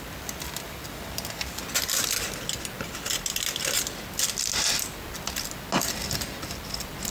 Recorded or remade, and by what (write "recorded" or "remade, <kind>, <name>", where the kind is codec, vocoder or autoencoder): recorded